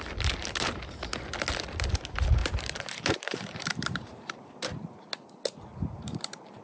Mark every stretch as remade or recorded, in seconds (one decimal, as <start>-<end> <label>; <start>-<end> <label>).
0.0-2.4 recorded; 2.4-4.5 remade; 4.5-5.7 recorded; 5.7-6.6 remade